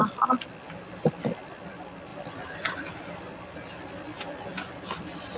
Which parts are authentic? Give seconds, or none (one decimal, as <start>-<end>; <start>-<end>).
0.0-5.4